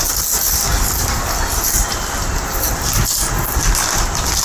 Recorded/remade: recorded